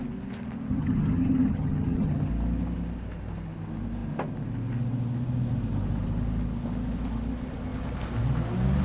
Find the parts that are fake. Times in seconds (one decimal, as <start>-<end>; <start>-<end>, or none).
0.7-2.3